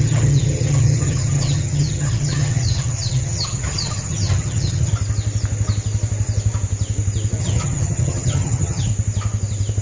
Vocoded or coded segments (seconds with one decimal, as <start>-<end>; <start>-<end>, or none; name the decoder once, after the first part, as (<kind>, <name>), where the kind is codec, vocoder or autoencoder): 0.0-4.9 (vocoder, HiFi-GAN); 7.4-8.9